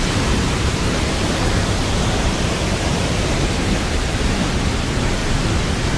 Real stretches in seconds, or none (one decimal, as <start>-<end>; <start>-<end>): none